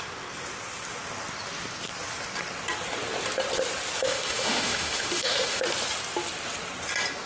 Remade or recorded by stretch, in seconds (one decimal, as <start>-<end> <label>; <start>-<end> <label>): 0.0-4.0 recorded; 4.0-5.6 remade; 5.6-7.3 recorded